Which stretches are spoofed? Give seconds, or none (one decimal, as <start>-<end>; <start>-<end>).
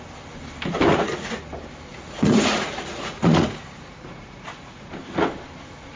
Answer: 0.9-1.5; 1.9-4.9